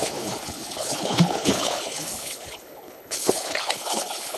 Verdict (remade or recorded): remade